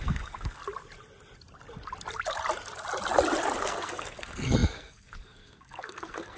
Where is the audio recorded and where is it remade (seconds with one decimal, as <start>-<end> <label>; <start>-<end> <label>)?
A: 0.0-0.6 remade; 0.6-3.6 recorded; 3.6-6.4 remade